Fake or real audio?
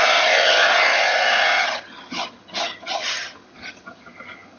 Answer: fake